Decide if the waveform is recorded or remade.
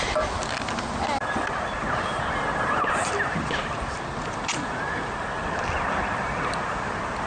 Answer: recorded